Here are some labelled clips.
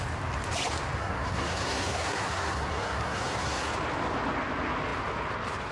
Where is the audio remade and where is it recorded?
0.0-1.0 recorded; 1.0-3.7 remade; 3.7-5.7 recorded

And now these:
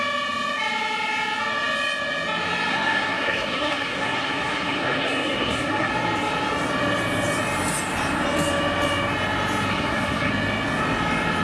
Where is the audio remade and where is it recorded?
0.0-2.7 recorded; 2.7-5.9 remade; 5.9-9.7 recorded; 9.7-10.3 remade; 10.3-11.4 recorded

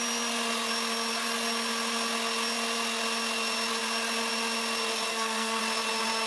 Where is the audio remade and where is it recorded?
0.0-5.1 recorded; 5.1-5.6 remade; 5.6-6.3 recorded

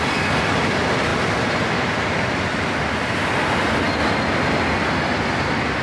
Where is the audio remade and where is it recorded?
0.0-5.8 recorded

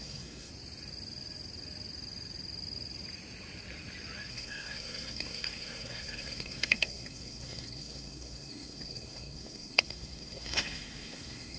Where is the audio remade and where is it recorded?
0.0-0.5 remade; 0.5-4.3 recorded; 4.3-11.6 remade

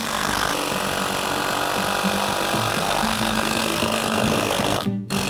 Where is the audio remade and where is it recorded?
0.0-0.5 remade; 0.5-2.7 recorded; 2.7-5.3 remade

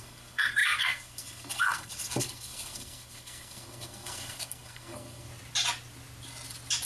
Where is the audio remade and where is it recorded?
0.0-5.3 remade; 5.3-6.9 recorded